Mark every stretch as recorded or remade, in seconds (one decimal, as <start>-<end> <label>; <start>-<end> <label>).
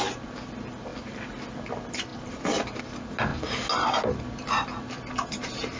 0.0-0.9 recorded; 0.9-1.5 remade; 1.5-2.1 recorded; 2.1-2.8 remade; 2.8-5.8 recorded